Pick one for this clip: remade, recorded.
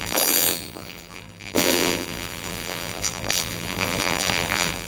remade